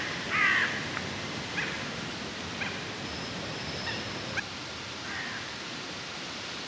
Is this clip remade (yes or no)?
no